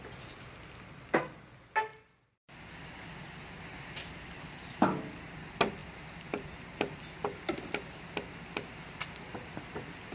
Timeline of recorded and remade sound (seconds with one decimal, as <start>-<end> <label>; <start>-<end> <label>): 0.0-10.1 recorded